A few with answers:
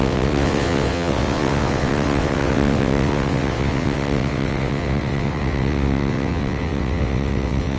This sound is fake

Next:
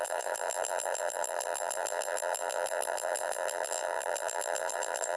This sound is fake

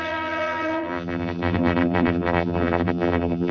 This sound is fake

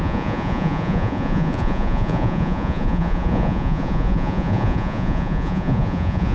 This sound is fake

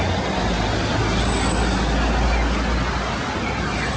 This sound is real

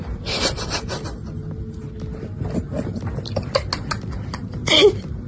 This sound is real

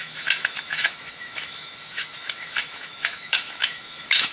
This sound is fake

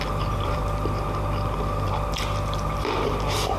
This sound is fake